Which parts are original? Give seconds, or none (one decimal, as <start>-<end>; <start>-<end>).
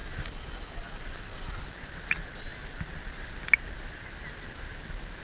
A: 0.0-5.2